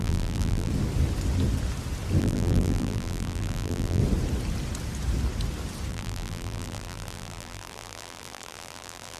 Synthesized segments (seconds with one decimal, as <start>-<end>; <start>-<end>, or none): 0.0-0.7; 2.2-4.0; 5.9-9.2

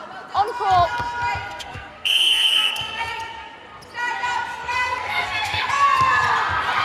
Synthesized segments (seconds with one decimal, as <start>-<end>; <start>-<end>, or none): 1.4-3.1; 4.6-5.7

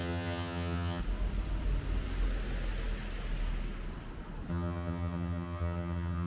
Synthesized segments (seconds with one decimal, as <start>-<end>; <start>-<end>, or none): 0.0-1.0; 4.5-6.3

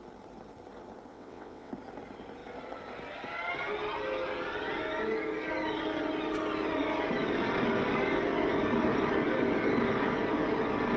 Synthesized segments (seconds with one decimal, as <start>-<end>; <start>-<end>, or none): 1.1-1.7

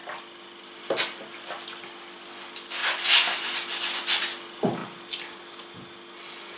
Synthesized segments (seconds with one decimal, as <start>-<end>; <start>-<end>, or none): none

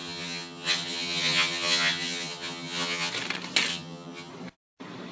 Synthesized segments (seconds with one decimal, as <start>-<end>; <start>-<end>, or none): 0.0-3.1; 3.7-4.3